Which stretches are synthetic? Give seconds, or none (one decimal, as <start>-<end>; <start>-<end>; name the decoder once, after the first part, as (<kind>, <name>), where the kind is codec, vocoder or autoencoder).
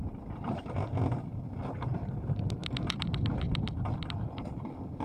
none